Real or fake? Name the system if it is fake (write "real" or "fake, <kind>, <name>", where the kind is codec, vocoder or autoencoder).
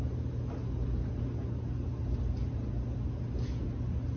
real